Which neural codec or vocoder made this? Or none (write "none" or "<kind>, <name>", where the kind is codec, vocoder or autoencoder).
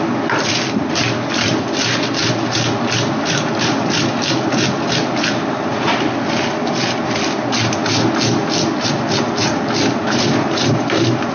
none